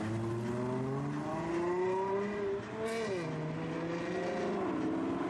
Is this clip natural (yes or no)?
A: yes